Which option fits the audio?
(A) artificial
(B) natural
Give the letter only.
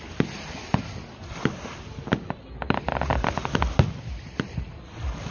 B